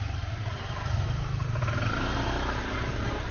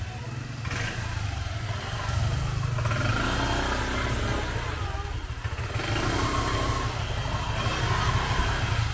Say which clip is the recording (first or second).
second